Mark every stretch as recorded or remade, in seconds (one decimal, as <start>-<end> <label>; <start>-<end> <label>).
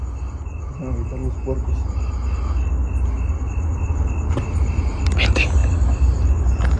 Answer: 0.0-6.8 recorded